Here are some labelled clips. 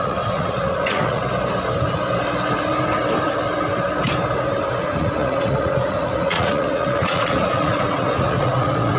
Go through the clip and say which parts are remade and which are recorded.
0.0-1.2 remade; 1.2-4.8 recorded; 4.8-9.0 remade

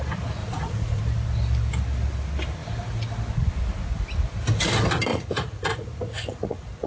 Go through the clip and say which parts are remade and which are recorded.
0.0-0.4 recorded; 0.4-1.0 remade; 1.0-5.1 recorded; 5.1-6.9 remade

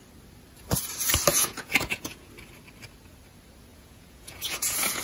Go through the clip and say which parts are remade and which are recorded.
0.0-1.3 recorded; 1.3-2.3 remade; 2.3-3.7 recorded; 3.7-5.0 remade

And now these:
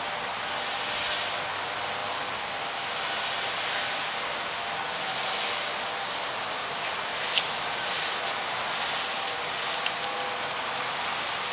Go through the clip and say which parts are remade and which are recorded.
0.0-11.5 recorded